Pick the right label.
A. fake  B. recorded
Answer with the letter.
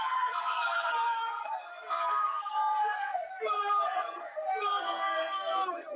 A